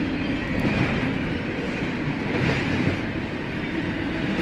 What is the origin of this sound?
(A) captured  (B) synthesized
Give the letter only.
A